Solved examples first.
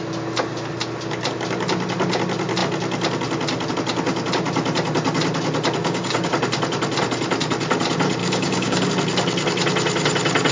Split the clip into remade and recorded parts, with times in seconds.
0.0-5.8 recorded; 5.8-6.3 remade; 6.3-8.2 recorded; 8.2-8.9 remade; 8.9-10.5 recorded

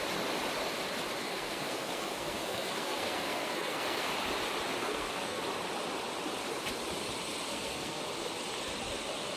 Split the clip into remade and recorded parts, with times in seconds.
0.0-1.2 recorded; 1.2-4.1 remade; 4.1-4.8 recorded; 4.8-5.4 remade; 5.4-7.5 recorded; 7.5-8.0 remade; 8.0-9.4 recorded

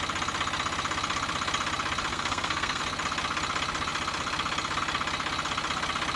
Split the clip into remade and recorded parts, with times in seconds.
0.0-2.1 recorded; 2.1-2.8 remade; 2.8-6.2 recorded

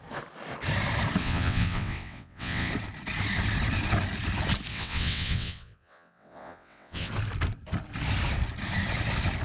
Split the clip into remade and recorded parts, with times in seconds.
0.0-1.2 recorded; 1.2-2.7 remade; 2.7-4.7 recorded; 4.7-7.1 remade; 7.1-9.4 recorded

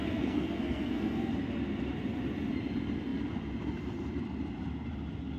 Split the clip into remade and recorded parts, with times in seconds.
0.0-1.3 remade; 1.3-5.4 recorded

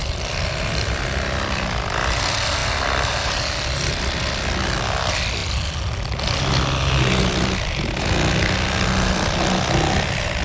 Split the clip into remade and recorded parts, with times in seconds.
0.0-10.4 recorded

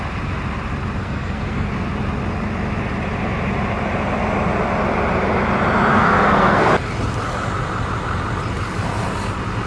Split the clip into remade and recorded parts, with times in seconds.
0.0-1.0 recorded; 1.0-1.7 remade; 1.7-5.9 recorded; 5.9-6.7 remade; 6.7-9.7 recorded